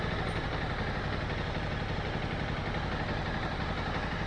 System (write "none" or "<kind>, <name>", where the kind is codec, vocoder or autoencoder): none